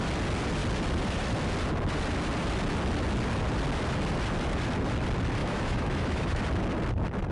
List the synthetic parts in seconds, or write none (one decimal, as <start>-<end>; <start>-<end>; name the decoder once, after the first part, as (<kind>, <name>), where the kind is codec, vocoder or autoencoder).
5.4-6.4 (autoencoder, DAC-VAE)